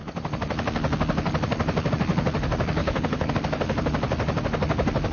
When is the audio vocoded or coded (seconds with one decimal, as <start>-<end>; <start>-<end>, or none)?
2.8-3.3